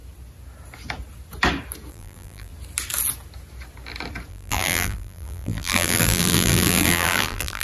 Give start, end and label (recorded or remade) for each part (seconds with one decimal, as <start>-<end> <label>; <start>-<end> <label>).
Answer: 0.0-1.9 recorded; 1.9-2.5 remade; 2.5-4.3 recorded; 4.3-7.6 remade